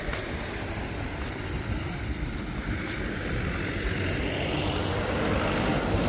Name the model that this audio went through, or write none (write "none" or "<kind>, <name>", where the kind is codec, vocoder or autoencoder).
none